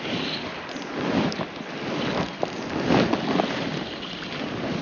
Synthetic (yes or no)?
no